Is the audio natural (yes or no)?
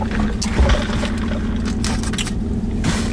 yes